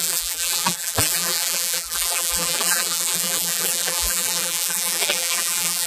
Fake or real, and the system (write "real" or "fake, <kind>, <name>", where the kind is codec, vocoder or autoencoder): fake, vocoder, BigVGAN v2